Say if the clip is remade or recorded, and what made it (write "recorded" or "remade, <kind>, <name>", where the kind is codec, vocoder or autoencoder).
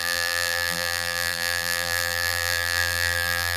remade, vocoder, BigVGAN v2